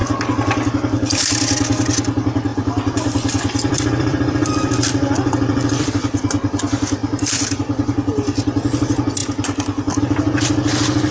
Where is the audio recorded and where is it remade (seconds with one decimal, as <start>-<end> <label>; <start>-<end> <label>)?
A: 0.0-2.5 recorded; 2.5-5.9 remade; 5.9-7.0 recorded; 7.0-7.6 remade; 7.6-11.1 recorded